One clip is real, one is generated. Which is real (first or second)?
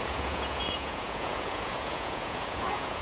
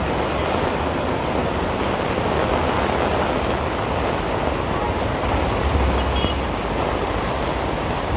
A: second